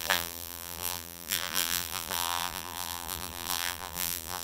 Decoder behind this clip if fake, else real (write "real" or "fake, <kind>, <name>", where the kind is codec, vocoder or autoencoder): fake, vocoder, BigVGAN v2